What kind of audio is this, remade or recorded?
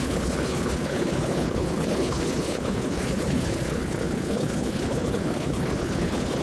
remade